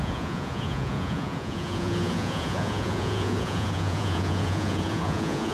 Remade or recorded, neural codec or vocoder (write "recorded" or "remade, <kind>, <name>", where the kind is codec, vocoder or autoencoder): remade, vocoder, Vocos